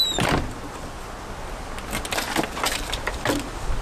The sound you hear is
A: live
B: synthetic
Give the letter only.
A